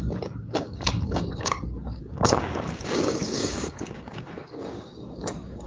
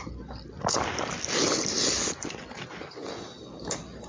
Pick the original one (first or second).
second